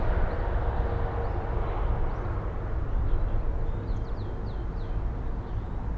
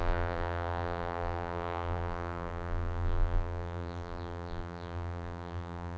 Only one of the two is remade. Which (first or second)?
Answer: second